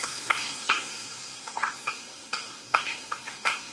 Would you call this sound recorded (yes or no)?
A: no